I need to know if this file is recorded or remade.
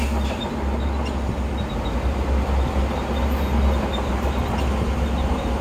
recorded